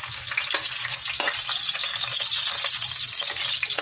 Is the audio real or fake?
real